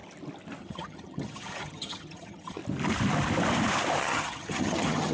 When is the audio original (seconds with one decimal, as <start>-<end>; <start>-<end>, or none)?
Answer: 0.0-0.6; 2.6-4.0